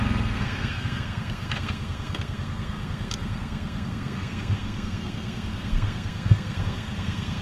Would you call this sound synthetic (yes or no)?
yes